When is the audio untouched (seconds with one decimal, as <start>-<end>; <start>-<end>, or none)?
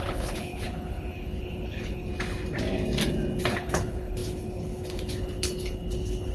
2.1-3.4